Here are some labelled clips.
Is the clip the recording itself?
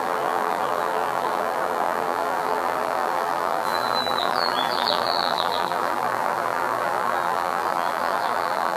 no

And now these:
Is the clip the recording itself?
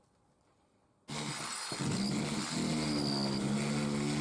yes